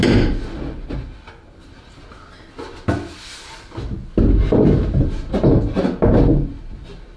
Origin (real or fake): real